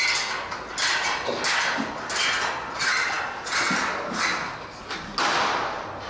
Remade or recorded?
recorded